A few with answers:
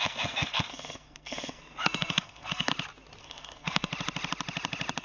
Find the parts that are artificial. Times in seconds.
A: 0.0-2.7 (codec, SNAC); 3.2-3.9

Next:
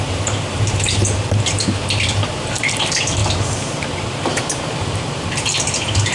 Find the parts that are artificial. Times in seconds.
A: 0.0-6.1 (vocoder, BigVGAN v2)